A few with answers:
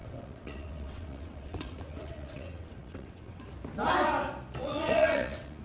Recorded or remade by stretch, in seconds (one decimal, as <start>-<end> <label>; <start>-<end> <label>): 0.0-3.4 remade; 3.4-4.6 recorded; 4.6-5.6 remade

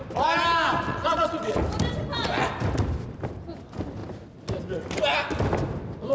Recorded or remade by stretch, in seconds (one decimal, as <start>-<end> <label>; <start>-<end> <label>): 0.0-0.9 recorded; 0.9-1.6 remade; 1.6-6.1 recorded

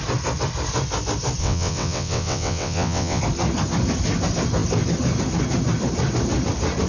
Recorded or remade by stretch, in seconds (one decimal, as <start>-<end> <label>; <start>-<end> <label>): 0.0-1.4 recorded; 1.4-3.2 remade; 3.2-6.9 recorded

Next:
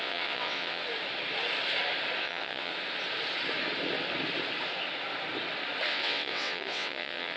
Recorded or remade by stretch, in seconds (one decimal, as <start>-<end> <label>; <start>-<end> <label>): 0.0-0.8 remade; 0.8-2.2 recorded; 2.2-2.7 remade; 2.7-5.9 recorded; 5.9-7.4 remade